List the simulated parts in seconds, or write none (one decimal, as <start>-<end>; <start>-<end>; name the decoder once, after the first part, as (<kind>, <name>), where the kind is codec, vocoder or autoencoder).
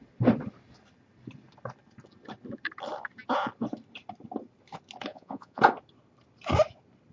5.1-5.6 (vocoder, Vocos)